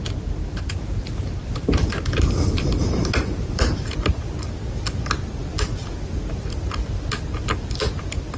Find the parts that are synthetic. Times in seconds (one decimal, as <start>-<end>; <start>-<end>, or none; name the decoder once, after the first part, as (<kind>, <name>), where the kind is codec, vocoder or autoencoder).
0.4-3.6 (vocoder, BigVGAN v2)